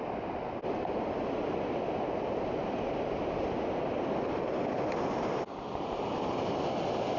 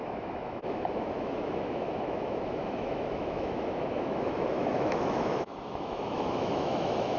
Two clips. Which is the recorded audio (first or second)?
first